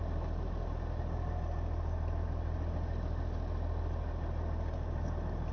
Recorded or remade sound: recorded